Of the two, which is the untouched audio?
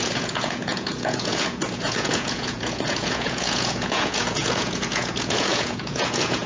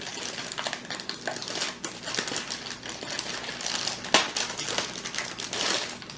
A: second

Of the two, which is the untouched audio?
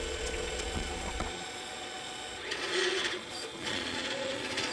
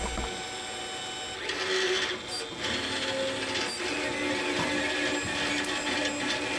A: second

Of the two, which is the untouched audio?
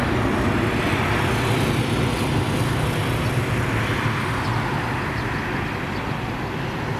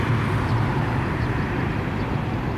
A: first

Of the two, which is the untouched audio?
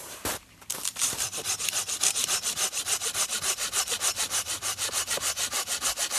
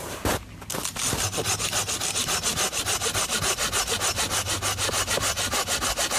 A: second